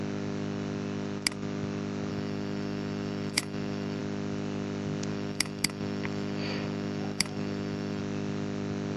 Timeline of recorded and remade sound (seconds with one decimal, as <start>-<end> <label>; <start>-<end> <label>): 0.0-2.1 recorded; 2.1-4.0 remade; 4.0-5.1 recorded; 5.1-8.0 remade; 8.0-9.0 recorded